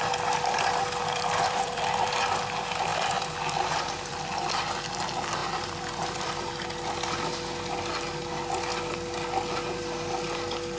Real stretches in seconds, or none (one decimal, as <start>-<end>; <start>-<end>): 0.0-1.0; 2.1-2.9; 4.6-5.4; 6.4-10.8